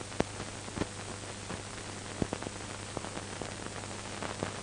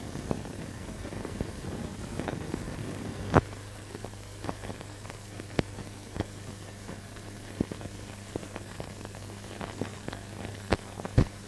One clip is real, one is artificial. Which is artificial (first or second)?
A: second